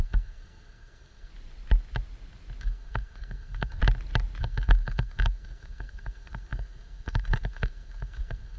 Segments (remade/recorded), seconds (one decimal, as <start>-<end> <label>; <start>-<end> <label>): 0.0-1.3 remade; 1.3-2.6 recorded; 2.6-3.8 remade; 3.8-4.4 recorded; 4.4-8.6 remade